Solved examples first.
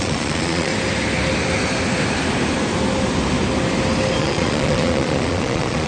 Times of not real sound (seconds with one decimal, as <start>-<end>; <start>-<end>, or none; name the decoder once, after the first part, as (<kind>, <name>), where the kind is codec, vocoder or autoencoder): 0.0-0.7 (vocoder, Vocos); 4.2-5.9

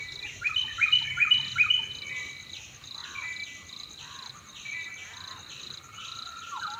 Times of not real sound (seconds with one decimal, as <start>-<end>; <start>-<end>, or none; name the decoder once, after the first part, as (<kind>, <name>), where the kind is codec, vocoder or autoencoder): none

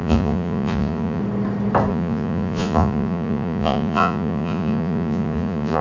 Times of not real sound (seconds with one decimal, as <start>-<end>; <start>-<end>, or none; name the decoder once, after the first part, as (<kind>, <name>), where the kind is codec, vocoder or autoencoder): 0.0-1.2 (vocoder, Vocos); 1.9-5.8